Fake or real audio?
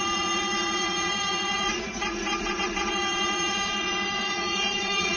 fake